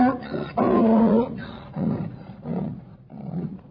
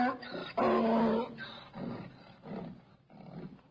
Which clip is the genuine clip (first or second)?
second